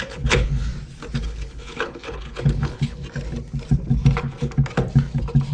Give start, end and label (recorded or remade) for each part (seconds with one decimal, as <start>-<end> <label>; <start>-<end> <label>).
0.0-0.7 remade; 0.7-1.2 recorded; 1.2-3.0 remade; 3.0-5.5 recorded